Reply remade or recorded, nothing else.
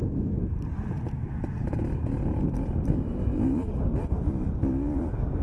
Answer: recorded